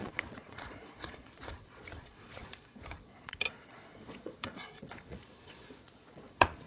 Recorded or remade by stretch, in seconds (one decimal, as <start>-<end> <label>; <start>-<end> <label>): 0.0-6.7 remade